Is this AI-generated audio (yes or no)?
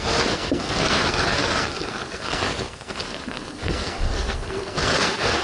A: yes